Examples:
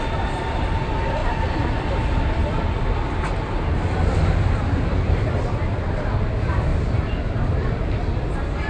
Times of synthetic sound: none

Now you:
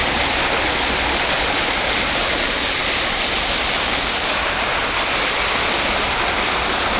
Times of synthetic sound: 1.3-2.8 (vocoder, BigVGAN v2); 3.7-4.8

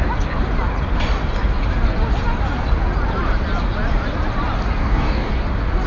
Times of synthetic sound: 4.8-5.3 (codec, DAC)

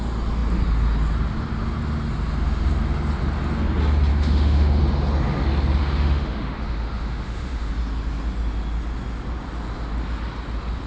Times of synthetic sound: 4.1-4.8 (autoencoder, DAC-VAE); 5.8-7.7

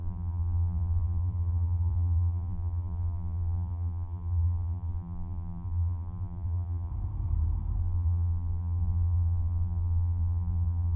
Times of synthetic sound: 0.0-6.9 (vocoder, BigVGAN v2); 7.8-11.0